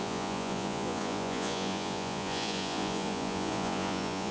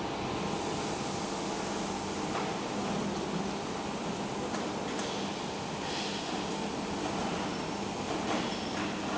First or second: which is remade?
first